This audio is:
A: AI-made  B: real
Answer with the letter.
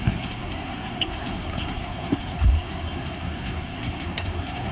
A